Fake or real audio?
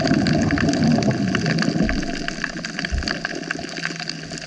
real